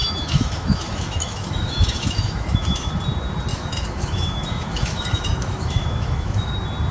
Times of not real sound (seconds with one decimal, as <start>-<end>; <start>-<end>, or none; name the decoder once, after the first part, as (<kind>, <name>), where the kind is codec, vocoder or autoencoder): 0.0-2.9 (autoencoder, DAC-VAE); 3.5-6.5